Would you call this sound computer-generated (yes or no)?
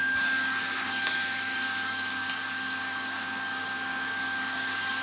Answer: yes